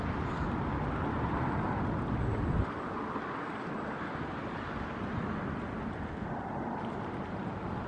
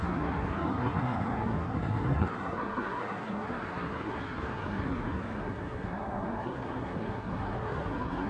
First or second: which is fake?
second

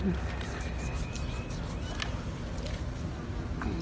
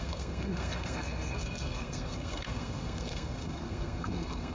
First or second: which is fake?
second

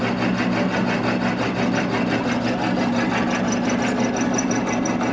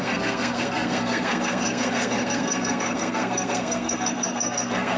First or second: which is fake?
second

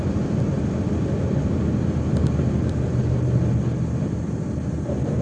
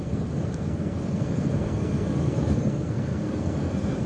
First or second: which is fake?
second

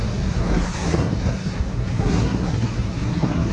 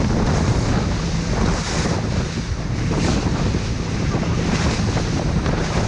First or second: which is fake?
first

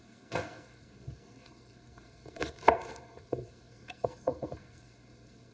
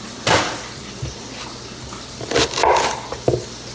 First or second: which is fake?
first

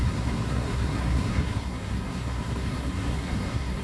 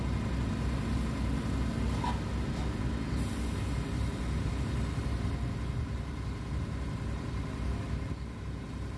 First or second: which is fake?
first